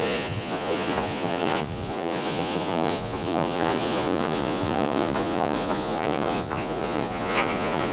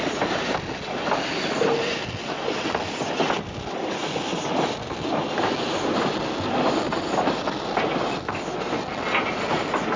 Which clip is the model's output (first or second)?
first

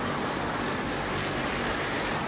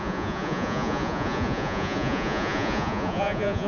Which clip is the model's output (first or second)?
second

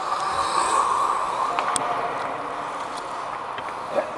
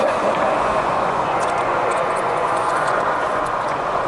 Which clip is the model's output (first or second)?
second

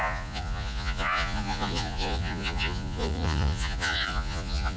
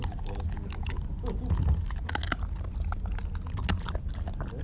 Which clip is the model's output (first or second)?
first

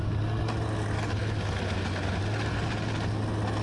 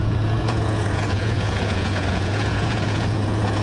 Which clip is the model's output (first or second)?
second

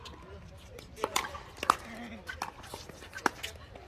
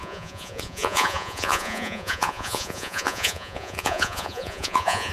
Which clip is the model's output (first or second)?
second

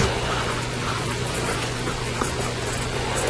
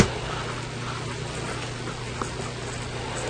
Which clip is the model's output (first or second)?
first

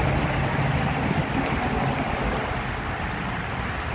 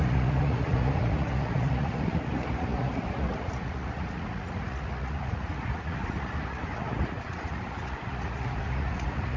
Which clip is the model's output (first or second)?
second